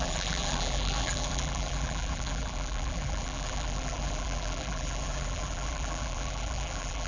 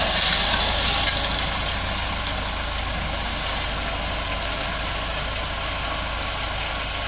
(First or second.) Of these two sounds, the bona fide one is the second